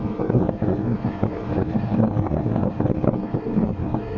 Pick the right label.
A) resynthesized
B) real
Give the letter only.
A